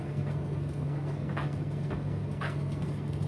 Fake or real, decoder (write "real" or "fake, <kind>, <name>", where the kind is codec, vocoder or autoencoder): fake, codec, SNAC